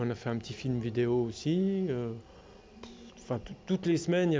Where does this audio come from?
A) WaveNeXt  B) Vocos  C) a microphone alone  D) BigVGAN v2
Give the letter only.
C